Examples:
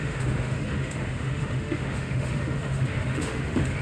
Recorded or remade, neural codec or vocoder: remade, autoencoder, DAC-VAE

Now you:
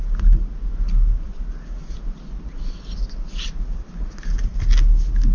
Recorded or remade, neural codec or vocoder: recorded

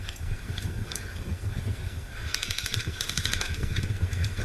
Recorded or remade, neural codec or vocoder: remade, codec, SNAC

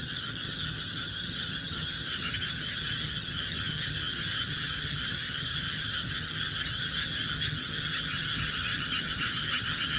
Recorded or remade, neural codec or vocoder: remade, vocoder, HiFi-GAN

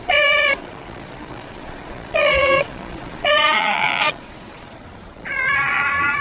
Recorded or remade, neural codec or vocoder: remade, vocoder, Vocos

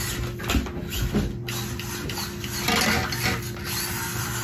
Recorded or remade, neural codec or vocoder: recorded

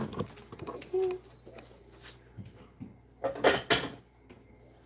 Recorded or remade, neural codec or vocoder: recorded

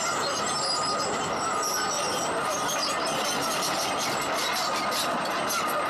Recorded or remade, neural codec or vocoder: recorded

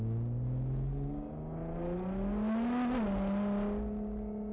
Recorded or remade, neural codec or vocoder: recorded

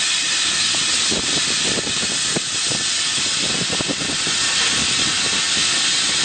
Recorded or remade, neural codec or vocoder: recorded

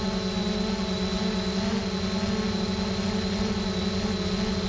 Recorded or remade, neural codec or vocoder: recorded